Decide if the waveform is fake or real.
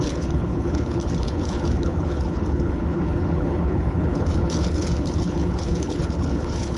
fake